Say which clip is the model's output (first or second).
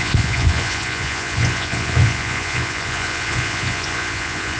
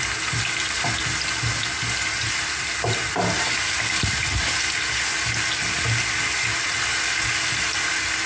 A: first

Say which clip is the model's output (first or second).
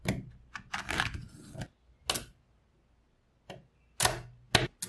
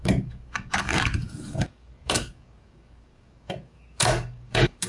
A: second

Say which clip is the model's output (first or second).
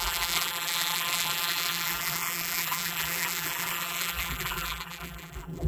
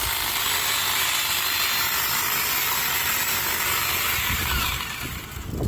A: first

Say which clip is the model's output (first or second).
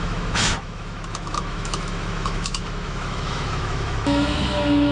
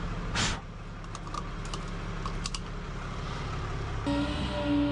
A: first